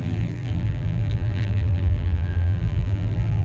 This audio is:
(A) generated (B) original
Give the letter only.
A